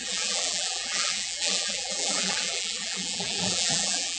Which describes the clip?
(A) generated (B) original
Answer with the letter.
A